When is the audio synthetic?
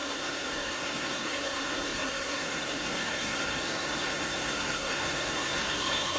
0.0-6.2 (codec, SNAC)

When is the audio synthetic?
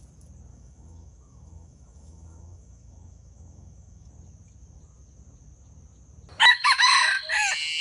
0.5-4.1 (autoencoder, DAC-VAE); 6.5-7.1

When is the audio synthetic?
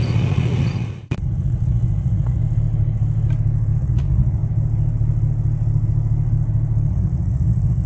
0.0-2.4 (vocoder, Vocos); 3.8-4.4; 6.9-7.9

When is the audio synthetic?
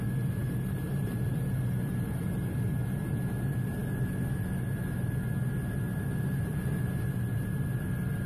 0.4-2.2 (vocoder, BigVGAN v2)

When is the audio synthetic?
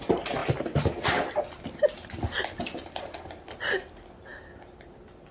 none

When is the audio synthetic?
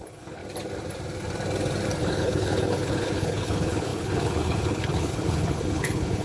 0.0-0.4 (codec, HILCodec); 2.0-6.2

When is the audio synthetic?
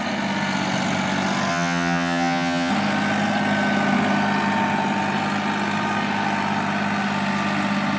1.5-2.7 (vocoder, HiFi-GAN)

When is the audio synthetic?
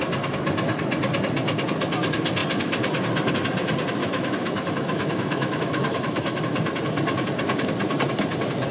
4.0-6.4 (autoencoder, DAC-VAE)